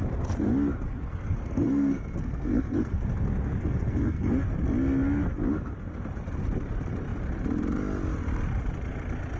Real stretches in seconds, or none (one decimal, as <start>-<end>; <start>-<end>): 0.0-0.9; 4.5-9.4